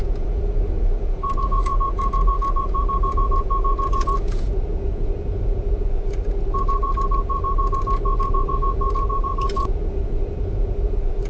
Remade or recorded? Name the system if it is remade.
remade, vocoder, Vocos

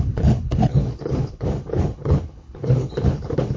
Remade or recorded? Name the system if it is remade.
remade, codec, HILCodec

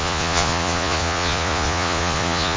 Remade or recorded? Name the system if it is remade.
remade, vocoder, Vocos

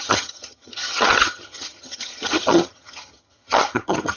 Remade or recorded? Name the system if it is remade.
remade, vocoder, HiFi-GAN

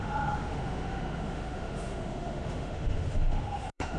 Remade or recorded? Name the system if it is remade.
remade, autoencoder, DAC-VAE